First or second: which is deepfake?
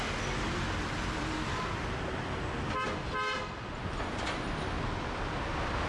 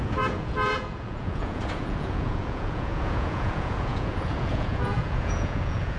second